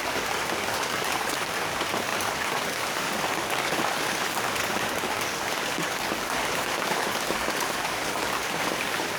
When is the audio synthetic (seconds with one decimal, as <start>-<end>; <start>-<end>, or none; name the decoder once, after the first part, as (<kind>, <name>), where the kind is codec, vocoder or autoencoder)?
0.0-9.2 (codec, DAC)